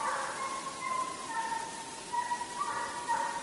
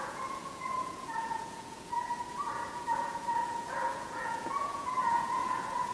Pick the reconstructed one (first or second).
second